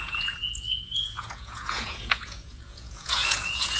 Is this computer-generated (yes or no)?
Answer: yes